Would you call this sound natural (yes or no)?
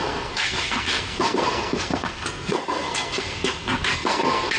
no